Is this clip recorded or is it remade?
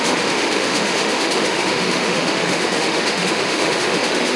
remade